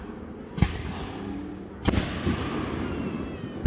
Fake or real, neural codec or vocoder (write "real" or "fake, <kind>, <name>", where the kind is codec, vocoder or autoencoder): real